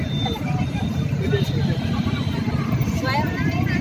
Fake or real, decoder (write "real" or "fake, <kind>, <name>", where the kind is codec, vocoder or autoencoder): real